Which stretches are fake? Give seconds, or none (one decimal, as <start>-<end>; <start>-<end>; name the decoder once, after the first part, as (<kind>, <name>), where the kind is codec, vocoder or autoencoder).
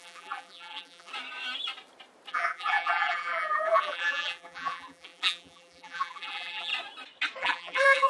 0.0-1.1 (vocoder, BigVGAN v2); 2.3-6.7; 7.4-8.1